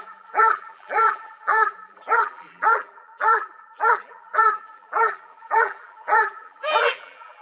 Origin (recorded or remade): remade